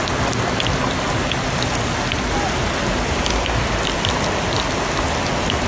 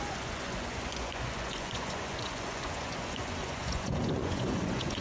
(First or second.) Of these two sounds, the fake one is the second